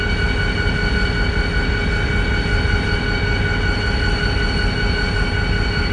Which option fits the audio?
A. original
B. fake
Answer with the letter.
A